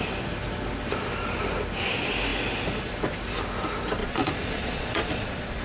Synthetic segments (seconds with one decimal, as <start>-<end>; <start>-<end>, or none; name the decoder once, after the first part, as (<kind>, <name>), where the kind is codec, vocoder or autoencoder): 4.0-5.6 (vocoder, Vocos)